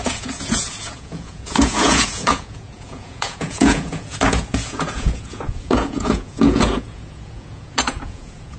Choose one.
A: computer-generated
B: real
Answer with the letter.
A